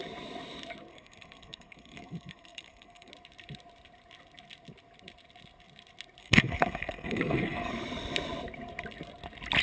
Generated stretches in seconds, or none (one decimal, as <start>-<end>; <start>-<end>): 0.9-3.1; 6.2-7.7